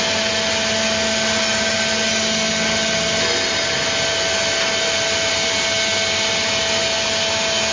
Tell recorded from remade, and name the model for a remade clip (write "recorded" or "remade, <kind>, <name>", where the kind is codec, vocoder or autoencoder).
recorded